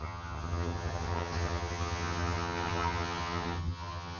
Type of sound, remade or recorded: remade